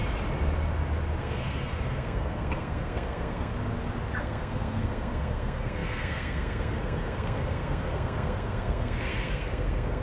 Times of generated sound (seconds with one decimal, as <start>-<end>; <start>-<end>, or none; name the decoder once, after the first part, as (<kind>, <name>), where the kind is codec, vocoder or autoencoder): 1.2-3.5 (codec, SNAC); 4.2-10.0